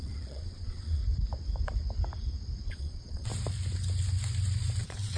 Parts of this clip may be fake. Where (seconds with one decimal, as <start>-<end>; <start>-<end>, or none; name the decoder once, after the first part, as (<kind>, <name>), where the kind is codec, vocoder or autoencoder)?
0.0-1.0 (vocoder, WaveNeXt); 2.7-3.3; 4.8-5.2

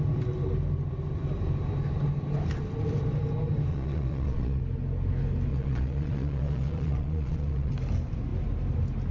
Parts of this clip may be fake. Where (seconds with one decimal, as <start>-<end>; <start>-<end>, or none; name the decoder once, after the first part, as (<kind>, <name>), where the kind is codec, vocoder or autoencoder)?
3.7-4.6 (vocoder, Vocos); 5.5-7.7

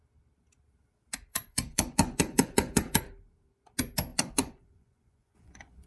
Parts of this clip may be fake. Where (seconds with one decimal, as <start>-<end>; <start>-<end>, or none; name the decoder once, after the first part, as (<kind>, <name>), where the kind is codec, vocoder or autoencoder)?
1.3-3.0 (vocoder, Vocos); 4.1-5.9

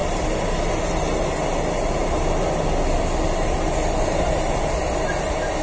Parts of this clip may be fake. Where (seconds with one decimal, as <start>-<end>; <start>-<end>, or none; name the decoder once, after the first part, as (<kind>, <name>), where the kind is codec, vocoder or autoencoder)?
none

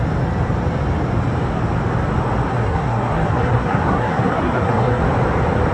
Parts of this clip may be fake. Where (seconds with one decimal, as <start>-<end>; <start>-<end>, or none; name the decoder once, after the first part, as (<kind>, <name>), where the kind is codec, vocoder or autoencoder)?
2.5-5.0 (codec, SNAC)

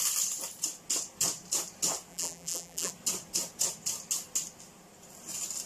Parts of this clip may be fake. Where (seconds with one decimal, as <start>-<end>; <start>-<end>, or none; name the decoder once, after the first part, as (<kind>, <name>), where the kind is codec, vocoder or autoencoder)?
2.1-2.9 (vocoder, BigVGAN v2)

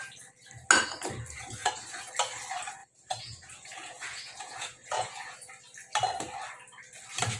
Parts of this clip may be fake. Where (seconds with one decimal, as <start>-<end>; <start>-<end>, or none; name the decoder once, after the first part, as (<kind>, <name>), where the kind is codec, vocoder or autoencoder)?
1.6-2.1 (vocoder, Vocos); 2.8-5.5

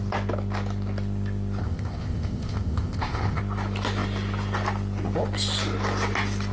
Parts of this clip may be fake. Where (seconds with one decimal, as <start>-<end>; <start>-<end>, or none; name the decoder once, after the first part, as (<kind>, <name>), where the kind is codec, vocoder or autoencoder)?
1.6-3.4 (codec, ZipCodec)